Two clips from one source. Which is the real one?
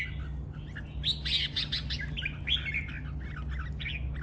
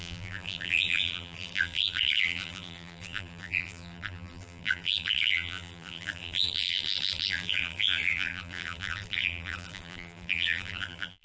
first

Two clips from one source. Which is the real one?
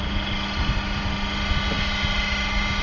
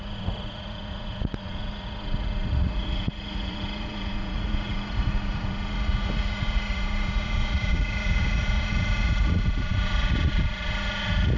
first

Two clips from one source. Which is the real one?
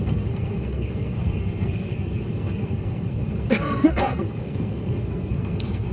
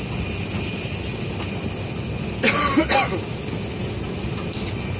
second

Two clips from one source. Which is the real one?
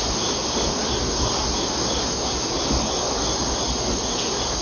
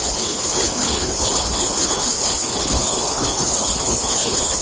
first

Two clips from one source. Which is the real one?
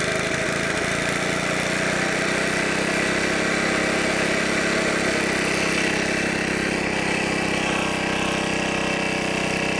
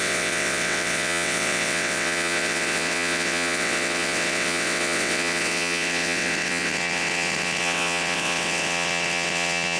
first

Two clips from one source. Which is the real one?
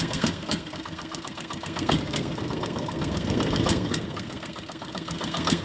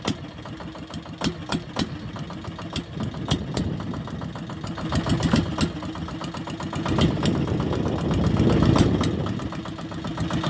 second